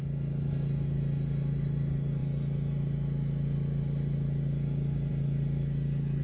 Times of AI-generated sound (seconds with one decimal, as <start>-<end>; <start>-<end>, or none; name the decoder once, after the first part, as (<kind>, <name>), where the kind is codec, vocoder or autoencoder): none